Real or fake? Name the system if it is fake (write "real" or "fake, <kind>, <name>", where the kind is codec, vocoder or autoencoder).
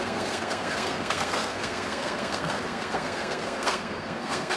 fake, codec, SNAC